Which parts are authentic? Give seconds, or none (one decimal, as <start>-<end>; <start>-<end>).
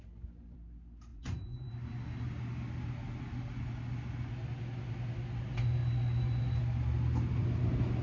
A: 0.0-1.1; 1.7-8.0